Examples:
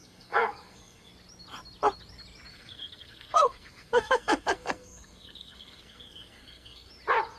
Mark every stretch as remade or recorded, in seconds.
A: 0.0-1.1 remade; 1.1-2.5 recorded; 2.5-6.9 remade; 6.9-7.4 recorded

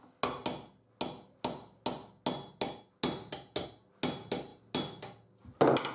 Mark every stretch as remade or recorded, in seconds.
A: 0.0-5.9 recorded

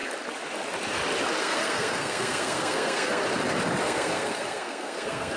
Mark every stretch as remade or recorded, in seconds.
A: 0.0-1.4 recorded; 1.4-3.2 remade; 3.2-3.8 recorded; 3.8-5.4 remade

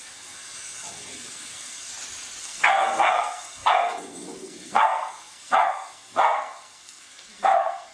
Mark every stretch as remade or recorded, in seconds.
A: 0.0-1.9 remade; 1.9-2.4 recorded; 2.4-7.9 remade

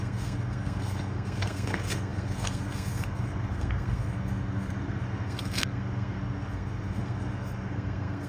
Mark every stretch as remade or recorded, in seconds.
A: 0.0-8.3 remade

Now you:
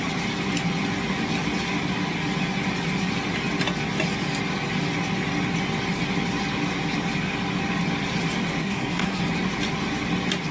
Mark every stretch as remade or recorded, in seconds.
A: 0.0-8.6 recorded; 8.6-9.2 remade; 9.2-10.5 recorded

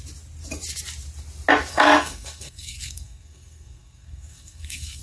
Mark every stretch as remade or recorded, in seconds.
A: 0.0-1.7 recorded; 1.7-5.0 remade

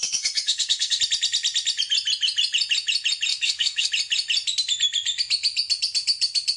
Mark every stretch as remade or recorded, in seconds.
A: 0.0-1.0 remade; 1.0-3.3 recorded; 3.3-3.9 remade; 3.9-6.6 recorded